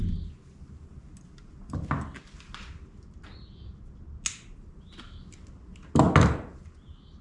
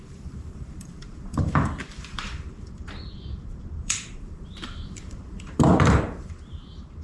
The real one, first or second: first